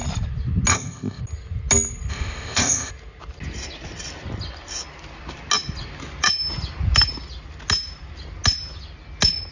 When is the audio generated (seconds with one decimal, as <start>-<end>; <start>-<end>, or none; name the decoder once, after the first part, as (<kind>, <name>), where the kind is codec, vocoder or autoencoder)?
0.7-1.2 (codec, ZipCodec); 2.1-2.9

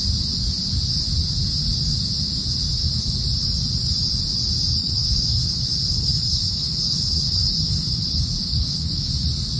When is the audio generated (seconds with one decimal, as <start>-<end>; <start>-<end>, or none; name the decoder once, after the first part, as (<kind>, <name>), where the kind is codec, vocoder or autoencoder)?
4.8-9.1 (codec, HILCodec)